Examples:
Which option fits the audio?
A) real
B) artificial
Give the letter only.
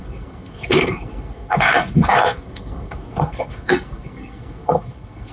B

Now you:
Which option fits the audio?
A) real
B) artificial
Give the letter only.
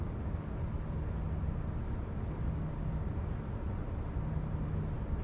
A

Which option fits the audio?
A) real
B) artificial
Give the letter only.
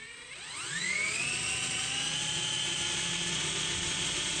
B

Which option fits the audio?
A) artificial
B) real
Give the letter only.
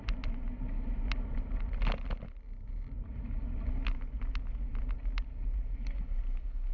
B